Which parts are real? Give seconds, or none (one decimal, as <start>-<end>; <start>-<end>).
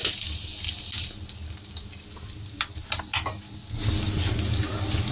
0.0-5.1